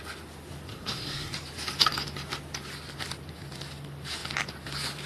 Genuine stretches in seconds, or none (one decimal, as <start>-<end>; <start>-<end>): 0.0-0.7; 1.3-5.1